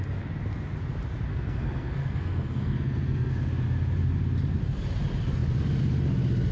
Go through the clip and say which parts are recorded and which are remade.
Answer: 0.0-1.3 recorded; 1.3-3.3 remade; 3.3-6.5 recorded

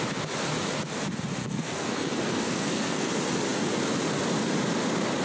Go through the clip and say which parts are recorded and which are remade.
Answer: 0.0-1.4 recorded; 1.4-3.1 remade; 3.1-5.2 recorded

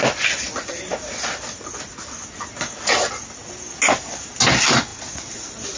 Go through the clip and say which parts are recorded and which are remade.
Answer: 0.0-5.8 recorded

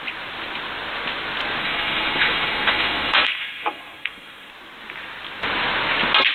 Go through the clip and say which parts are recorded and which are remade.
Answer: 0.0-1.6 recorded; 1.6-4.5 remade; 4.5-6.3 recorded